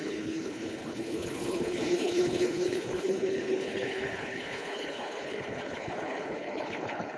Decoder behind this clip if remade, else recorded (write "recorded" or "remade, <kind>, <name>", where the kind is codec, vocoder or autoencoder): remade, codec, HILCodec